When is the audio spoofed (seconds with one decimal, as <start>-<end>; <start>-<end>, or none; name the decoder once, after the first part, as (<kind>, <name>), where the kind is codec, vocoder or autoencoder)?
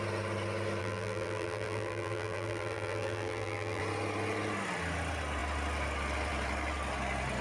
0.8-3.8 (vocoder, BigVGAN v2)